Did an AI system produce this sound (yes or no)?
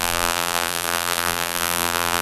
yes